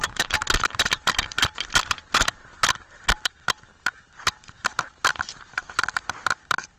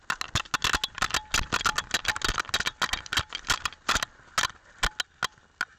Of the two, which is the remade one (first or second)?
first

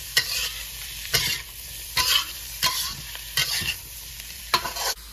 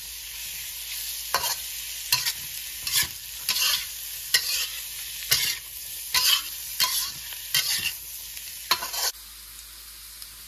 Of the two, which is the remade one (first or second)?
first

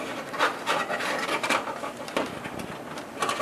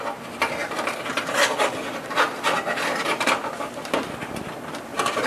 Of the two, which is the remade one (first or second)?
first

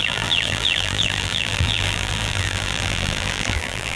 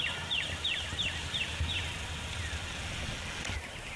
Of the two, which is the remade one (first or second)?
first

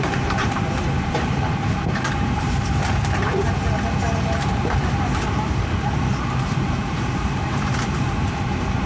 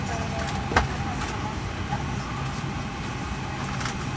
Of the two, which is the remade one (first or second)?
first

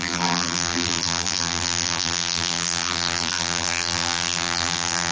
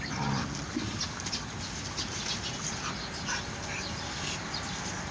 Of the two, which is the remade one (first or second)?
first